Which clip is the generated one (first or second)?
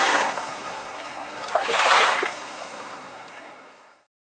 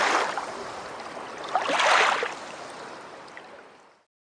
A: first